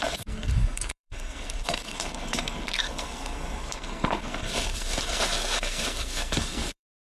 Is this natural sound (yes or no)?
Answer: no